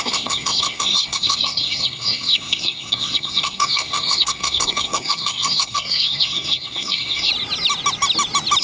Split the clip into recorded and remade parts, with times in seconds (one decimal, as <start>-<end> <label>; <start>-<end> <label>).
0.0-7.3 remade; 7.3-8.6 recorded